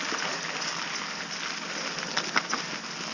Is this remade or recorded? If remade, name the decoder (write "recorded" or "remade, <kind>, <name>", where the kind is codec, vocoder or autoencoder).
recorded